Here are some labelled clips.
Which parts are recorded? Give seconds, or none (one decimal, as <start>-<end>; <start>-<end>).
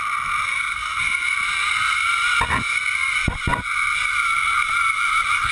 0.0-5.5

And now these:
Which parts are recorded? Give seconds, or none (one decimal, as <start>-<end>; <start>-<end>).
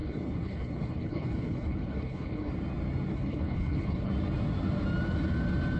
2.5-3.1; 4.1-5.8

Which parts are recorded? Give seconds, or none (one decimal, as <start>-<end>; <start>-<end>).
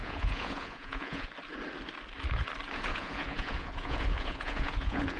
1.3-2.9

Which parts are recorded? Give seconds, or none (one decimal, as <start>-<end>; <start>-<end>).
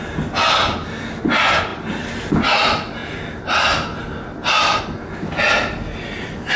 0.0-6.6